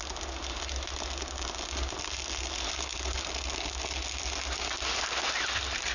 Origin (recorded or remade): recorded